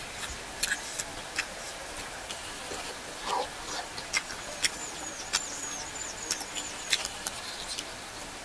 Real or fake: real